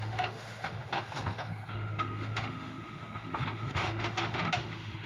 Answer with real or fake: fake